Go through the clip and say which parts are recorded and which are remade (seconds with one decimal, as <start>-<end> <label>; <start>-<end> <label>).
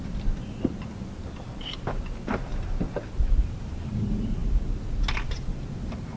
0.0-6.2 recorded